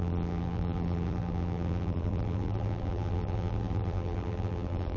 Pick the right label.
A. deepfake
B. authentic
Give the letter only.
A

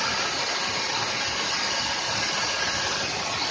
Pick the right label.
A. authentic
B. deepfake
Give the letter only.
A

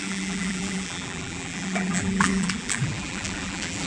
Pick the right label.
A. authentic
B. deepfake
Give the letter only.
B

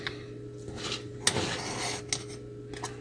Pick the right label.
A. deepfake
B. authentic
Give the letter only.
B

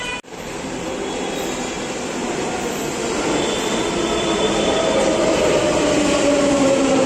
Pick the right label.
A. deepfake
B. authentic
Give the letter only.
A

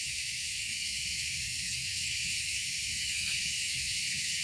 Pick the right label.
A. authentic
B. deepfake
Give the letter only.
B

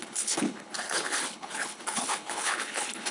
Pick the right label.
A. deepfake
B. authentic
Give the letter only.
A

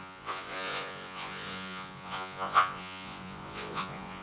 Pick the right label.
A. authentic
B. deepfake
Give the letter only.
B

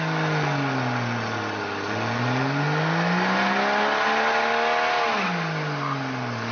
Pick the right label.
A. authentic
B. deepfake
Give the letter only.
A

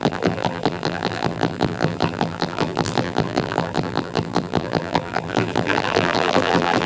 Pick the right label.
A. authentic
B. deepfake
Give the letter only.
B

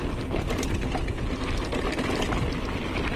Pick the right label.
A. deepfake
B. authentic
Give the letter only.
B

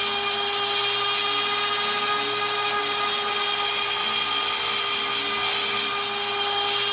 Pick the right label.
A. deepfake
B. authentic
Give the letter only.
B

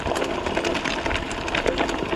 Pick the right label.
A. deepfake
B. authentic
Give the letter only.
B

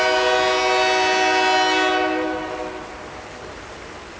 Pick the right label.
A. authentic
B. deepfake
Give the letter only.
A